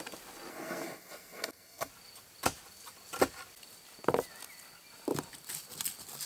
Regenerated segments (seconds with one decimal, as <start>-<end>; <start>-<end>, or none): 0.5-1.9